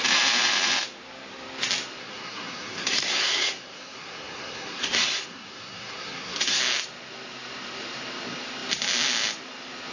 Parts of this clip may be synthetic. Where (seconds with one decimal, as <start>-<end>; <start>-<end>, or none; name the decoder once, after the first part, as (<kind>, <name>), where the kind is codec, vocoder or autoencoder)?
2.0-6.6 (codec, SNAC)